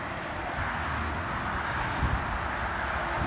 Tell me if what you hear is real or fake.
real